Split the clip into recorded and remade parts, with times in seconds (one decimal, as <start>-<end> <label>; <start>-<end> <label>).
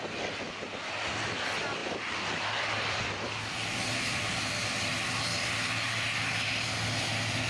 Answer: 0.0-1.8 recorded; 1.8-3.4 remade; 3.4-7.5 recorded